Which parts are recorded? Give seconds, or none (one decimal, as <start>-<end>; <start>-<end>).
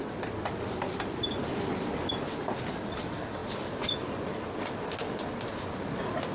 0.0-6.3